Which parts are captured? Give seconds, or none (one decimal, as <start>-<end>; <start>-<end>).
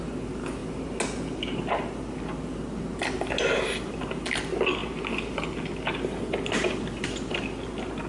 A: 0.0-8.1